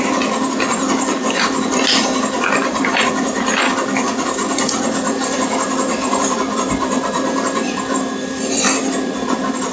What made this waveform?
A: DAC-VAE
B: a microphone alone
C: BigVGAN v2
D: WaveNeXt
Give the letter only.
C